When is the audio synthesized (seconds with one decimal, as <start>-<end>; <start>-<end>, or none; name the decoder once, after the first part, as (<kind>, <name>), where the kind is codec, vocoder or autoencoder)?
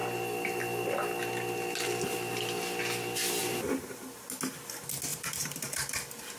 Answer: 3.4-4.0 (vocoder, BigVGAN v2); 5.1-5.9